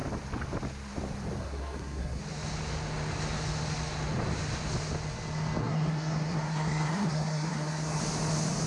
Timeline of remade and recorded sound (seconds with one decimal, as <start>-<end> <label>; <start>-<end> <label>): 0.0-1.4 recorded; 1.4-2.2 remade; 2.2-5.6 recorded; 5.6-8.0 remade; 8.0-8.7 recorded